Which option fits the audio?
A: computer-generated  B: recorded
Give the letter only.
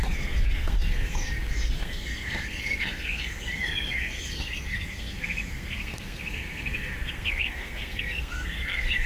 A